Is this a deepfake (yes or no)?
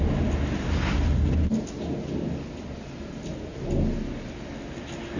no